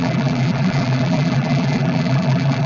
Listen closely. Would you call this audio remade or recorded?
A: remade